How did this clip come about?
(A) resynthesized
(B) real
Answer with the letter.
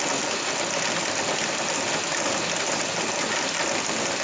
B